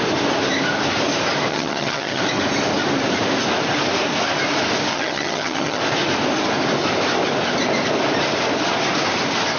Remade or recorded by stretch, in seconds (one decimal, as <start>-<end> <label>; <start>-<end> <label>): 0.0-1.5 recorded; 1.5-2.2 remade; 2.2-4.9 recorded; 4.9-5.8 remade; 5.8-9.6 recorded